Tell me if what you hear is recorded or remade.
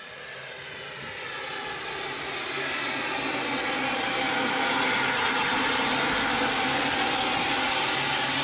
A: recorded